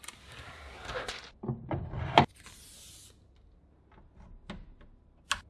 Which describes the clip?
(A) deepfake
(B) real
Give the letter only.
B